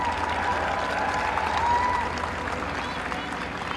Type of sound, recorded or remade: recorded